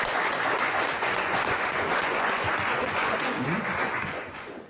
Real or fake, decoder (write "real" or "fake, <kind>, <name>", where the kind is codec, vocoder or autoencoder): fake, vocoder, Vocos